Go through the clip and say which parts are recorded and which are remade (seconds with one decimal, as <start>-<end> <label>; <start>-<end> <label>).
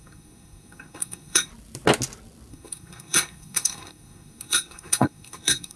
0.0-1.5 remade; 1.5-2.5 recorded; 2.5-5.8 remade